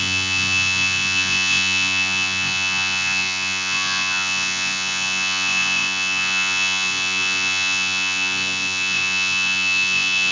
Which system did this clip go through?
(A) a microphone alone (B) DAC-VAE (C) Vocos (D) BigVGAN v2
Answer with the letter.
C